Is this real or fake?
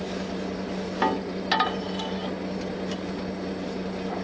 real